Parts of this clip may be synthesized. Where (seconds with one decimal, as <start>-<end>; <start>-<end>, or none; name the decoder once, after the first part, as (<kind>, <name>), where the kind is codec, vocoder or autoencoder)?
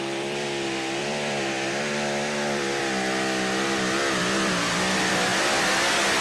0.0-2.8 (vocoder, BigVGAN v2); 4.2-6.2